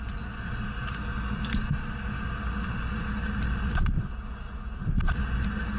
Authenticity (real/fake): real